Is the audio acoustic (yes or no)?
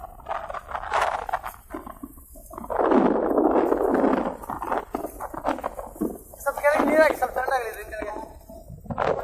yes